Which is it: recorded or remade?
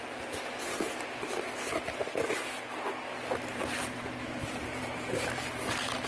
recorded